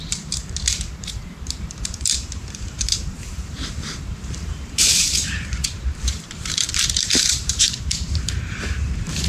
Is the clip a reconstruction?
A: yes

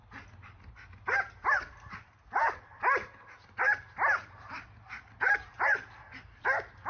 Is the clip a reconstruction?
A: no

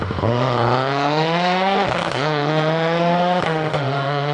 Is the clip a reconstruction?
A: yes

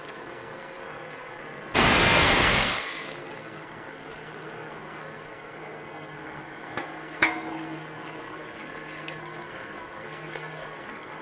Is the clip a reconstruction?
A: yes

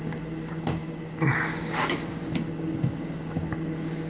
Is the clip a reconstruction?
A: yes